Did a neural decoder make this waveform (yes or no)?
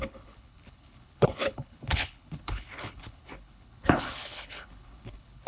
yes